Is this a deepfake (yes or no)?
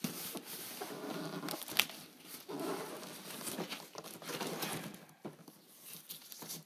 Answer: no